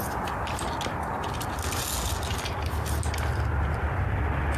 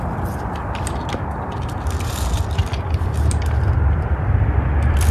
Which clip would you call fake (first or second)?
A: second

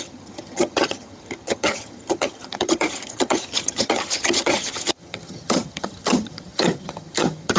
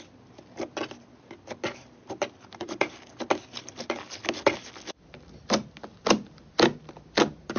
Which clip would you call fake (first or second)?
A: first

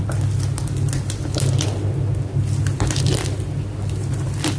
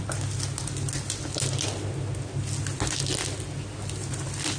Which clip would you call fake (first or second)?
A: first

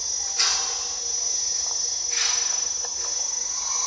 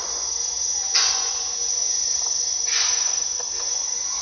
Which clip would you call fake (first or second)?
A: second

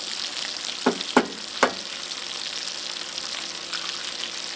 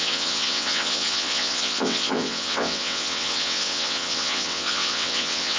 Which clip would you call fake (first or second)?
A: second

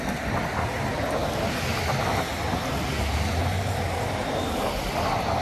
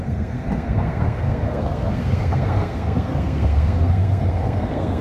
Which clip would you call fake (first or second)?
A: second